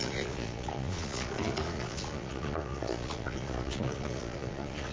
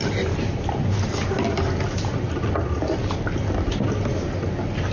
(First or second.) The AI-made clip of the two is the first